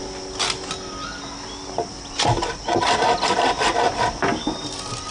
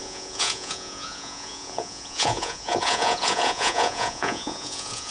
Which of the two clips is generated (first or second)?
second